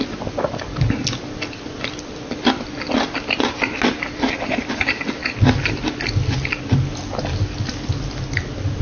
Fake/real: real